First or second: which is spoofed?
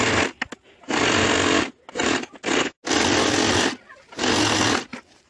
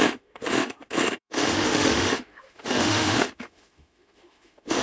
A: second